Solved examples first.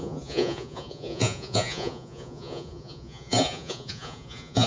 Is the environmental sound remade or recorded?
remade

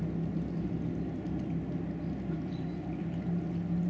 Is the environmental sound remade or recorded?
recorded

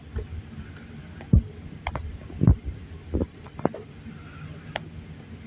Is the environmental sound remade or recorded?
recorded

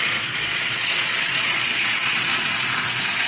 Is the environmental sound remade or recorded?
remade